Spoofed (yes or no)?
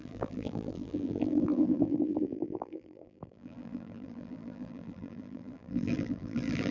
yes